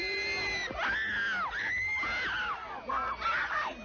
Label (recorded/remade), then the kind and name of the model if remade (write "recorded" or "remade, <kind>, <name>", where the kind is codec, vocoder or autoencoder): recorded